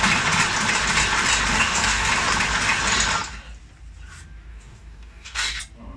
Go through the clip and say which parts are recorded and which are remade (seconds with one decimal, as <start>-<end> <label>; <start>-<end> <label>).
0.0-1.5 recorded; 1.5-2.1 remade; 2.1-4.5 recorded; 4.5-5.6 remade; 5.6-6.0 recorded

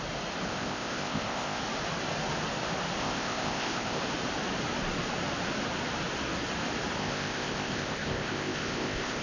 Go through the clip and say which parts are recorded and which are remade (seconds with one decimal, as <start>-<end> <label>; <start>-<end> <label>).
0.0-0.5 recorded; 0.5-1.6 remade; 1.6-3.0 recorded; 3.0-4.0 remade; 4.0-7.0 recorded; 7.0-9.2 remade

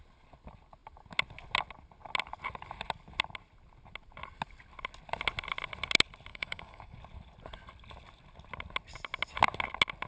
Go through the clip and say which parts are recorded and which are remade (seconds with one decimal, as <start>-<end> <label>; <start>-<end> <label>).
0.0-6.3 recorded; 6.3-7.0 remade; 7.0-10.1 recorded

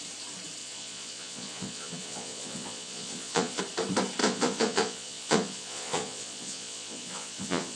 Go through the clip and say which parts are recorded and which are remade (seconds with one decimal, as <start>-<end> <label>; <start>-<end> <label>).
0.0-0.6 recorded; 0.6-3.6 remade; 3.6-4.2 recorded; 4.2-7.8 remade

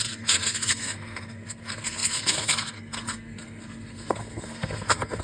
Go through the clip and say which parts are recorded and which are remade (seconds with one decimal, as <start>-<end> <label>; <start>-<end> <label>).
0.0-5.2 remade